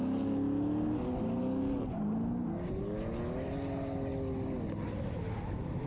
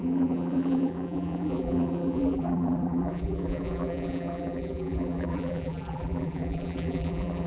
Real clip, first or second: first